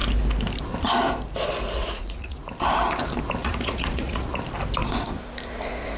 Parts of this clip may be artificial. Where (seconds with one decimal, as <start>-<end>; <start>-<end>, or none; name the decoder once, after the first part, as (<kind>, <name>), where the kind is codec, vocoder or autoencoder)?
1.8-2.5 (vocoder, Vocos); 3.4-4.4

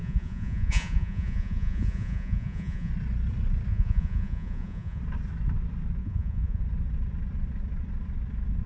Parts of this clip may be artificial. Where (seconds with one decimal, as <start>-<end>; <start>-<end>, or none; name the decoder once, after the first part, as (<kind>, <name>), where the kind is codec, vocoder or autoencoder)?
0.0-2.9 (vocoder, Vocos); 3.7-5.0; 6.0-6.6

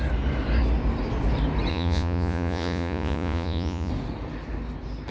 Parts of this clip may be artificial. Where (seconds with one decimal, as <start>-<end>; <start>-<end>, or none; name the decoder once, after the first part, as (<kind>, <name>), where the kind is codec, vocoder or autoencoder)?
1.7-3.9 (vocoder, Vocos)

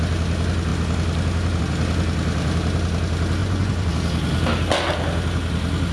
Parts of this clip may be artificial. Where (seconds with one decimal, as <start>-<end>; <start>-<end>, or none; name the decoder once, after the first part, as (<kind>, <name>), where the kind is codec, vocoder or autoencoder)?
3.4-3.9 (vocoder, Vocos)

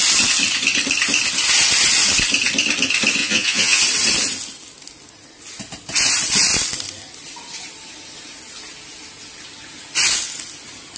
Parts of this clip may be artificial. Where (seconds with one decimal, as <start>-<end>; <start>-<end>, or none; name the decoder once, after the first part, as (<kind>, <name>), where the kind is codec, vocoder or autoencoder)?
3.2-3.8 (vocoder, Vocos)

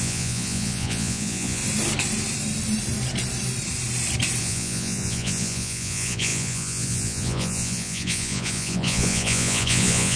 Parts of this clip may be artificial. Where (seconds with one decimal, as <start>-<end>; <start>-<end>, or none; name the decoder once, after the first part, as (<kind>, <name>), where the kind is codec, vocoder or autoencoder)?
0.0-1.6 (vocoder, Vocos); 4.4-10.2

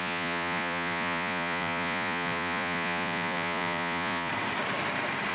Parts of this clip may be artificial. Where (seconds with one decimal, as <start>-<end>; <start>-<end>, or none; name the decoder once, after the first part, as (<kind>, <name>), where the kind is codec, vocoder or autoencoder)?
0.0-4.3 (vocoder, Vocos)